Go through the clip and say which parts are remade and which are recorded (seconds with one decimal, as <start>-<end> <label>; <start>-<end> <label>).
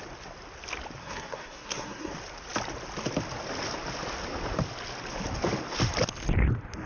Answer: 0.0-1.0 recorded; 1.0-2.1 remade; 2.1-6.9 recorded